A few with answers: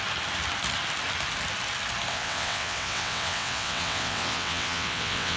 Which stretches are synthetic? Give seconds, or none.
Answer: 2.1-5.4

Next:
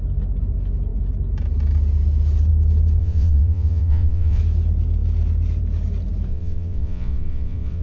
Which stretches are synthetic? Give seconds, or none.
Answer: 3.0-4.4; 6.3-7.8

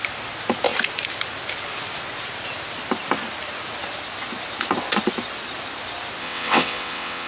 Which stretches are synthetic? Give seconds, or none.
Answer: 6.2-7.3

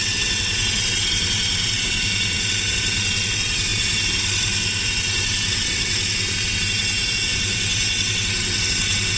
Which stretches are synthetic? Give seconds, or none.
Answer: 0.0-9.2

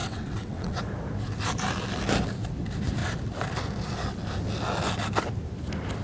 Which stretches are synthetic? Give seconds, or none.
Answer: 0.0-0.8